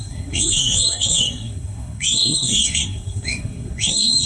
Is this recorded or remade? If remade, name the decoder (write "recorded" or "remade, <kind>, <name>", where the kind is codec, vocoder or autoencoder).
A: remade, codec, SNAC